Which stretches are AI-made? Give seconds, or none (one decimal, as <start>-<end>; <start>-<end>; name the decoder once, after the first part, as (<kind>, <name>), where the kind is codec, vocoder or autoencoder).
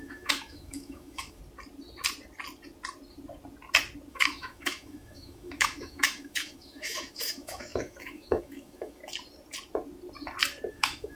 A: 0.0-1.4 (autoencoder, DAC-VAE); 4.1-9.0; 10.7-11.1